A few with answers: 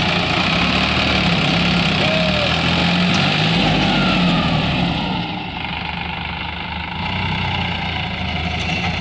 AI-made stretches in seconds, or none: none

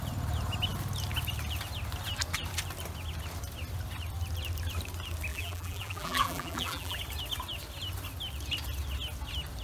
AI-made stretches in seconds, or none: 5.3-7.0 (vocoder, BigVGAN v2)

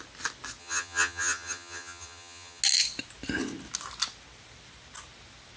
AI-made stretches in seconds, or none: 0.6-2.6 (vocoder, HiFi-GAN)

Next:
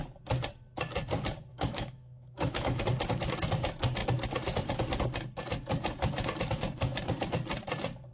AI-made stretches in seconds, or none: 1.5-2.8 (autoencoder, DAC-VAE)

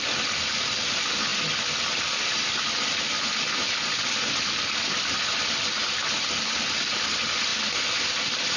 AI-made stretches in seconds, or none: none

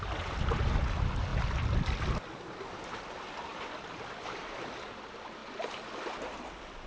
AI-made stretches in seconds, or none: none